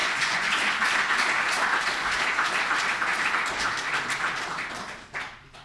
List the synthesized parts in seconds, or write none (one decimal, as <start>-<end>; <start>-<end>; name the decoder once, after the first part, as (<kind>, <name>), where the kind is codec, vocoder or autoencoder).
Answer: 0.0-0.5 (vocoder, Vocos)